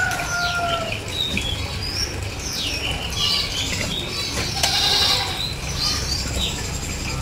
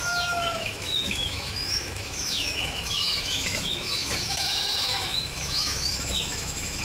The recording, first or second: first